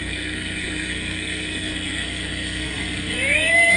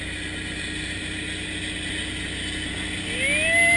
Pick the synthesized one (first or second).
first